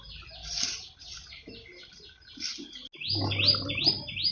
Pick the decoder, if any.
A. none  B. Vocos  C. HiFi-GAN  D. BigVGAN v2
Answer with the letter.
A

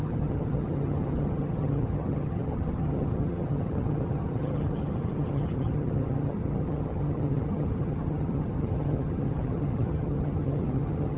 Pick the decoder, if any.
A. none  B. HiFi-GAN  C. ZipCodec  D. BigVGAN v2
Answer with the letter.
B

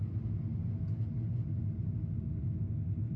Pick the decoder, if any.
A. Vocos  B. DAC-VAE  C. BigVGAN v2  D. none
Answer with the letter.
D